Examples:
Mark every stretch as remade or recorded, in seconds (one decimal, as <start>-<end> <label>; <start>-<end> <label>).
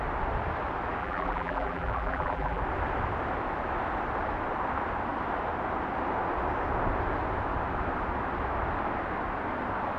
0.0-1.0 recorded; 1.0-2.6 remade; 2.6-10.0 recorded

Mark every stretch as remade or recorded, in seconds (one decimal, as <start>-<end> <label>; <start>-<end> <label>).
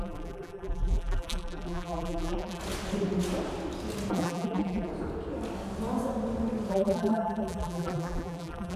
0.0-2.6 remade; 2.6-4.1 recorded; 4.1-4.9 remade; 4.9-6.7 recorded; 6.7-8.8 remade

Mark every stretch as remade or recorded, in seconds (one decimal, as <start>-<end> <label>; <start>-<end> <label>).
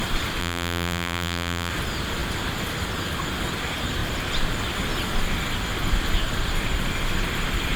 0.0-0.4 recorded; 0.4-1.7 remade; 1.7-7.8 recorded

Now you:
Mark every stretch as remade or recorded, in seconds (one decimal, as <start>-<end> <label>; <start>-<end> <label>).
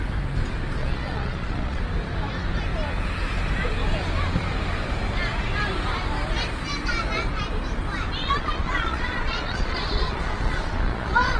0.0-0.8 recorded; 0.8-1.8 remade; 1.8-8.2 recorded; 8.2-11.4 remade